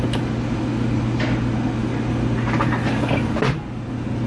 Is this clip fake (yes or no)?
no